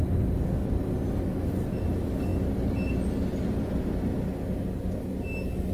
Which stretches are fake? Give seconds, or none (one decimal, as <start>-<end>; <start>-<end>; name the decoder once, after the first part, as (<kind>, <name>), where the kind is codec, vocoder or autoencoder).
0.6-1.2 (vocoder, BigVGAN v2)